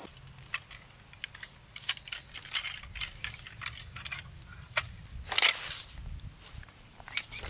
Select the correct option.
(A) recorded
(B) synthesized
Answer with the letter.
A